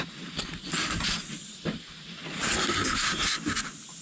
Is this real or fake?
real